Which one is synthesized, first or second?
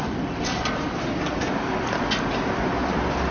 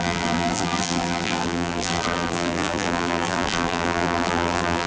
second